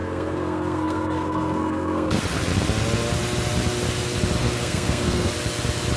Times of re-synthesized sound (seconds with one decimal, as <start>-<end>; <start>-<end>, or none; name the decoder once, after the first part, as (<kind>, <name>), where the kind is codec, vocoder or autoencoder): 0.0-2.2 (codec, SNAC); 4.4-5.3

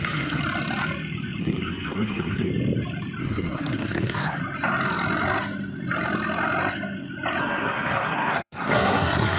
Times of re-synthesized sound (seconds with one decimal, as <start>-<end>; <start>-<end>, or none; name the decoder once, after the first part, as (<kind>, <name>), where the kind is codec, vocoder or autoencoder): 0.0-0.4 (codec, SNAC); 1.4-2.5; 3.2-4.4; 7.4-9.4

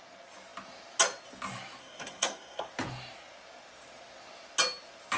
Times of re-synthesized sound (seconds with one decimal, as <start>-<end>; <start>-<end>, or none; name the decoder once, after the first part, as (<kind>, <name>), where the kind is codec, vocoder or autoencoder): 1.8-2.7 (codec, SNAC)

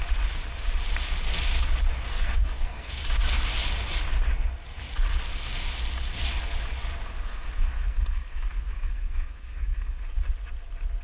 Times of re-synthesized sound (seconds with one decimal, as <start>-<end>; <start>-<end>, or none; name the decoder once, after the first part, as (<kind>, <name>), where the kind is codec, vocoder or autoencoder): 2.1-2.9 (codec, SNAC); 7.0-10.0

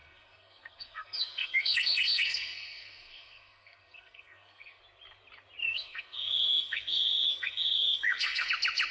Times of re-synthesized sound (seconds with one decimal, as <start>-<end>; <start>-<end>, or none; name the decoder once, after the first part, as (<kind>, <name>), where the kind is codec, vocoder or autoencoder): 0.0-4.8 (codec, SNAC); 5.6-8.5

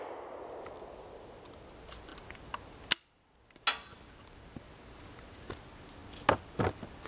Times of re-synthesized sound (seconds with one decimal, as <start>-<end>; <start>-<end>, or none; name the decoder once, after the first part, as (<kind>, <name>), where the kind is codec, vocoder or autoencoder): none